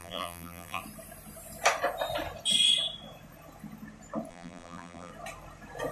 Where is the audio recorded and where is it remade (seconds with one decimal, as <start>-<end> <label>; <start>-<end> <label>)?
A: 0.0-0.8 remade; 0.8-4.3 recorded; 4.3-5.1 remade; 5.1-5.9 recorded